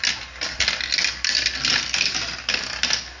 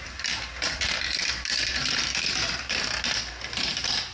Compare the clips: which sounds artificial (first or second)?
second